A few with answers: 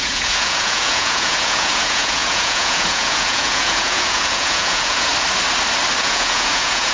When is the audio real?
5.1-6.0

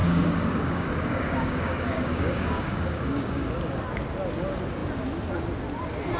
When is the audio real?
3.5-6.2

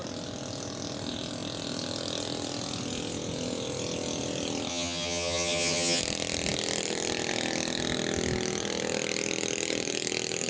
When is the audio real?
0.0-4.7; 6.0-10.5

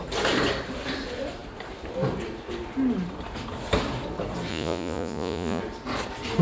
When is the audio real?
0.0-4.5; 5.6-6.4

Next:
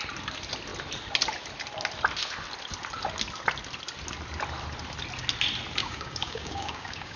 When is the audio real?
0.0-5.8

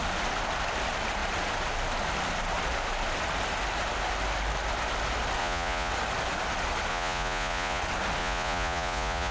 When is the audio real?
0.0-5.4; 5.9-6.9; 7.8-8.2